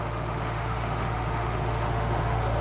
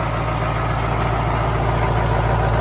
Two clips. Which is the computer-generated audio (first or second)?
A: first